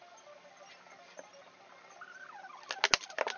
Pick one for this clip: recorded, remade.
recorded